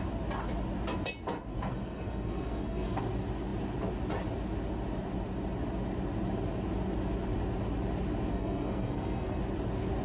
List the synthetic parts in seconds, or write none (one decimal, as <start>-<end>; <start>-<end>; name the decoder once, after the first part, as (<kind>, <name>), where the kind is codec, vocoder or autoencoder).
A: 1.5-3.0 (codec, SNAC); 8.3-9.4